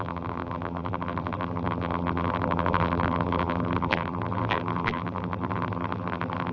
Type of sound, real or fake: fake